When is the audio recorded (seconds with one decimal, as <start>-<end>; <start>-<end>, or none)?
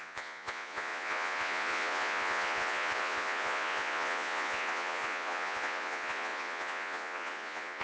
none